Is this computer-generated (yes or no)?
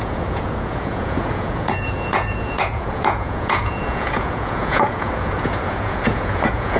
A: yes